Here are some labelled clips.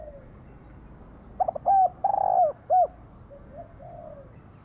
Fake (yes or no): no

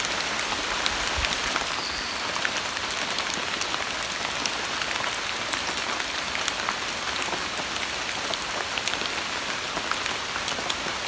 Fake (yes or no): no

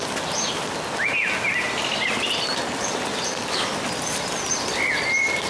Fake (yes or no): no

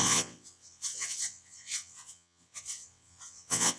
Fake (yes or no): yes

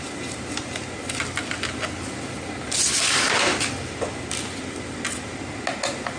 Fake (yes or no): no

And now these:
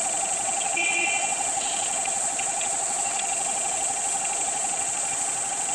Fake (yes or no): yes